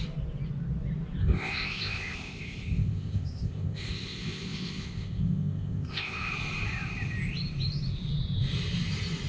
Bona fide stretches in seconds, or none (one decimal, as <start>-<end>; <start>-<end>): 0.0-1.2; 6.3-9.3